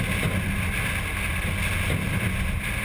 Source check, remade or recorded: recorded